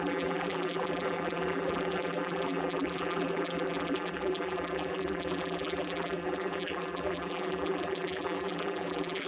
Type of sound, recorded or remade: remade